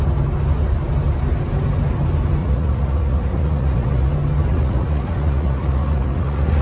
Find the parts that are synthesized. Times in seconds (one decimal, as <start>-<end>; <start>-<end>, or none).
2.4-4.1; 4.5-6.6